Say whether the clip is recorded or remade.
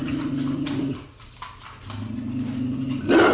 recorded